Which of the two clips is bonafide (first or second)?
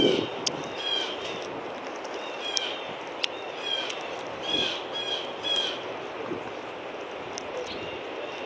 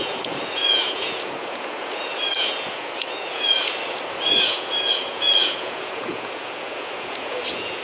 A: first